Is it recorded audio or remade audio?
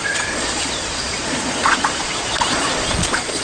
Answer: remade